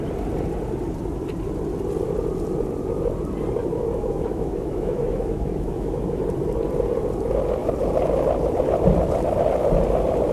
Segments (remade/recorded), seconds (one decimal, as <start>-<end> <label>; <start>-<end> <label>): 0.0-3.6 recorded; 3.6-6.2 remade; 6.2-10.3 recorded